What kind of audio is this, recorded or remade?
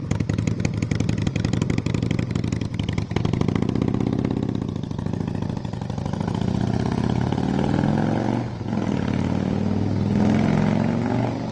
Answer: recorded